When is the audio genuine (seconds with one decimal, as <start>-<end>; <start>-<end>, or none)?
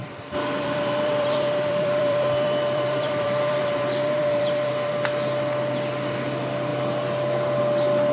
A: 4.9-8.1